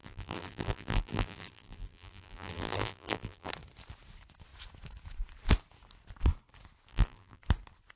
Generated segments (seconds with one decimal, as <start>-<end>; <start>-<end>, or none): 0.0-3.5; 6.9-7.4